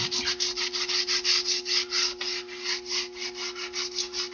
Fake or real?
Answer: real